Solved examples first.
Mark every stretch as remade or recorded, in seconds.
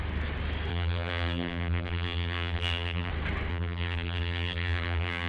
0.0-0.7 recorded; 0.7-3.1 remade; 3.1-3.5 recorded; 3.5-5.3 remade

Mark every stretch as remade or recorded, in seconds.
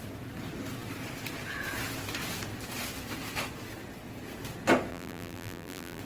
0.0-4.9 recorded; 4.9-6.0 remade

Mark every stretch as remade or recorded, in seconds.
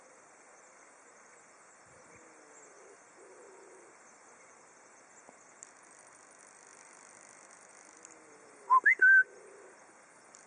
0.0-6.7 recorded; 6.7-8.9 remade; 8.9-10.5 recorded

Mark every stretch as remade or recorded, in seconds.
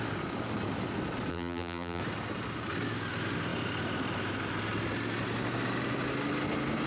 0.0-1.3 recorded; 1.3-2.0 remade; 2.0-6.9 recorded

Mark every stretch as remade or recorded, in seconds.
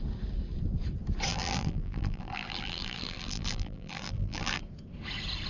0.0-1.3 recorded; 1.3-4.6 remade; 4.6-5.5 recorded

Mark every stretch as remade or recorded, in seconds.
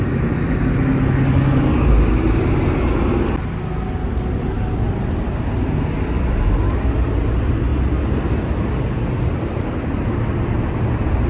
0.0-11.3 recorded